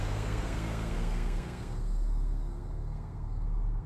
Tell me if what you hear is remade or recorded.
remade